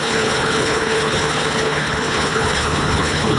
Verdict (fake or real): fake